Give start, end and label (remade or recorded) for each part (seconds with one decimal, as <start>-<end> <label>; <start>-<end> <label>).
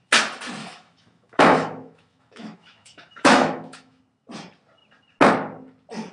0.0-0.6 recorded; 0.6-4.0 remade; 4.0-6.1 recorded